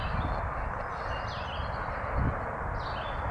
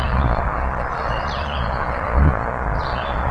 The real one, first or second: first